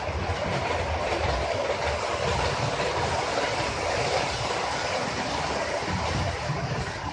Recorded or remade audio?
recorded